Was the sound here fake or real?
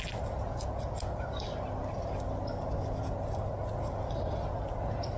real